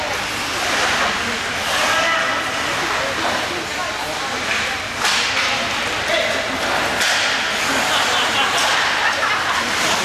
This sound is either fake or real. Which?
real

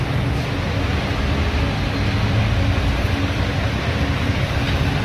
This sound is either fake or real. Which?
real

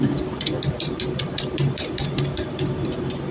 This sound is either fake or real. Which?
real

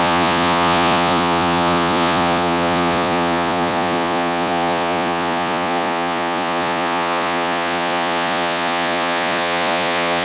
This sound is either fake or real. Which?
fake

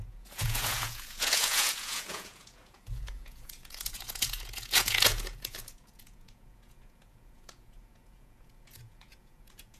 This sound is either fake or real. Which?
fake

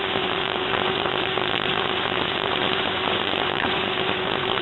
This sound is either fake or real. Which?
fake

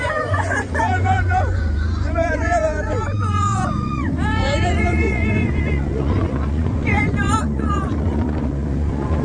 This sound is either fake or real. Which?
fake